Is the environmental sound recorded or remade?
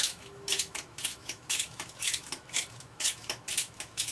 remade